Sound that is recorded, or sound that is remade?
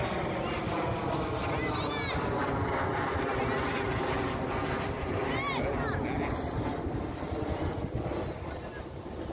recorded